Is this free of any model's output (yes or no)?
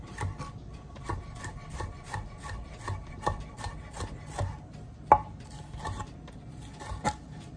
yes